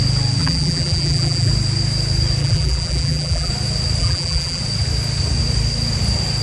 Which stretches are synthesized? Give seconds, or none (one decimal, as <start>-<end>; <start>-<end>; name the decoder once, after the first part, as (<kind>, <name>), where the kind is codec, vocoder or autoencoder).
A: 0.4-1.5 (vocoder, BigVGAN v2); 2.4-3.5; 4.0-4.6

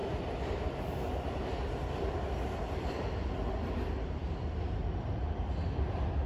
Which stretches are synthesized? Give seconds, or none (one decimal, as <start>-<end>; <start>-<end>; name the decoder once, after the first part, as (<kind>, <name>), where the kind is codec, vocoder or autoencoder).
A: none